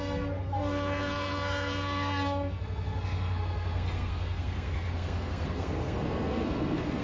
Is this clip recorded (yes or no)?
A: no